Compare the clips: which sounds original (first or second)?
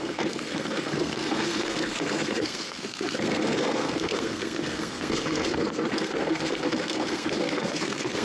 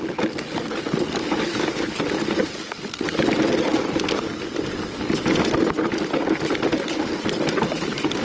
second